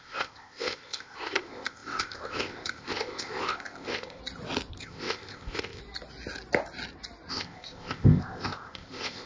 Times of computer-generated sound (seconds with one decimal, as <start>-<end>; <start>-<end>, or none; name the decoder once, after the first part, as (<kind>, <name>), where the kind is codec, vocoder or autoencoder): 0.0-4.2 (codec, ZipCodec); 4.8-5.8; 7.3-9.3